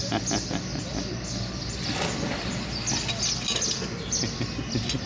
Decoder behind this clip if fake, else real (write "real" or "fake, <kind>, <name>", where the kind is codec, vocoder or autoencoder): real